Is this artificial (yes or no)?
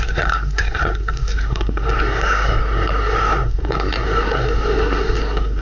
yes